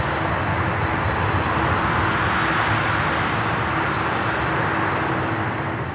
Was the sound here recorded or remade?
recorded